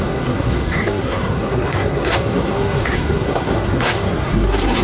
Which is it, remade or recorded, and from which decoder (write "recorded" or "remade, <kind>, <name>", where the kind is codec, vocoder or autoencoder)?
remade, codec, SNAC